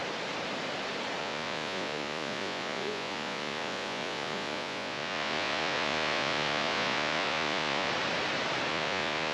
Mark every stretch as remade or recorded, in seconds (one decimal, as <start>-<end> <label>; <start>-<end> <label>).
0.0-1.2 recorded; 1.2-7.9 remade; 7.9-8.7 recorded; 8.7-9.3 remade

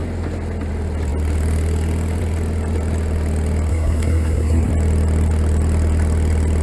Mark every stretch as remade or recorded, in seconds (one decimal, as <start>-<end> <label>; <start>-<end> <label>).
0.0-3.7 recorded; 3.7-4.7 remade; 4.7-6.6 recorded

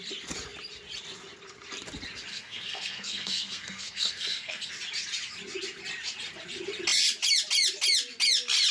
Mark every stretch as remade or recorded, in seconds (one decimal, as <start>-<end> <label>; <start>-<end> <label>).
0.0-2.3 recorded; 2.3-4.7 remade; 4.7-8.7 recorded

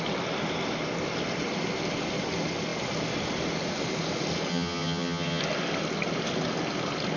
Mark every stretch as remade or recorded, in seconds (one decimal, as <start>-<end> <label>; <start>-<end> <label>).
0.0-4.5 recorded; 4.5-5.4 remade; 5.4-7.2 recorded

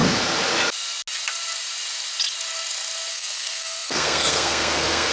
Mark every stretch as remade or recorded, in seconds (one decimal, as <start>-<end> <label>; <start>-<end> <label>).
0.0-3.1 recorded; 3.1-5.1 remade